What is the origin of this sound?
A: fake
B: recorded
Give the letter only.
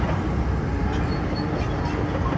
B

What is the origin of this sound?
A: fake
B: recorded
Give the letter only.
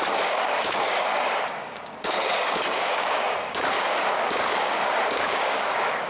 A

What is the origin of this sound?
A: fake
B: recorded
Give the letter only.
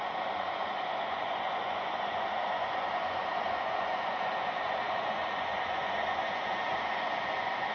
A